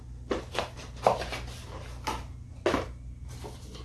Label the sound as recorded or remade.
recorded